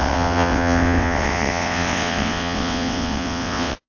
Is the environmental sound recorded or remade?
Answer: remade